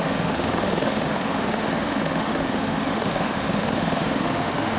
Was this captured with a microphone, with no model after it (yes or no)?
no